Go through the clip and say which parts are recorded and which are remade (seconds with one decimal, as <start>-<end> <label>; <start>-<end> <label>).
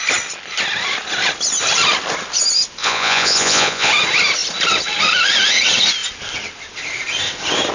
0.0-2.8 recorded; 2.8-3.9 remade; 3.9-7.7 recorded